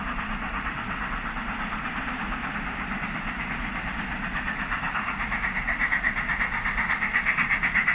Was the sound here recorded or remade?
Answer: recorded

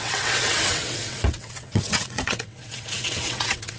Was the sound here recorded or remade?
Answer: remade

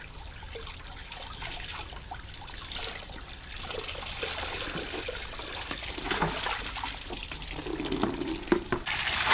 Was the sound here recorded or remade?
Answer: recorded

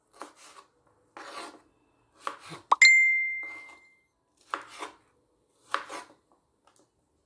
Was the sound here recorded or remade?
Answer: recorded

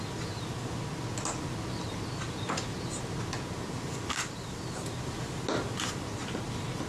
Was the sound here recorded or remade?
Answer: recorded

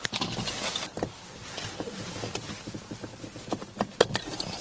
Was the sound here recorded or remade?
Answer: recorded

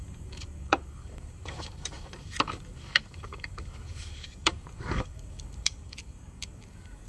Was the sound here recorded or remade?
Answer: remade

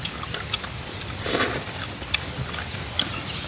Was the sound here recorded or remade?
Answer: recorded